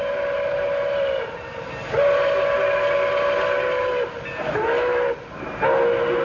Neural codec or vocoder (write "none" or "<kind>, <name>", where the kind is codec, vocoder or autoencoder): none